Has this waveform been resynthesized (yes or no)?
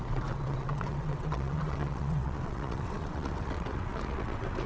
yes